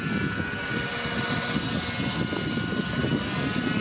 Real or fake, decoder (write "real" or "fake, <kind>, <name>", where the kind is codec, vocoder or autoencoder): real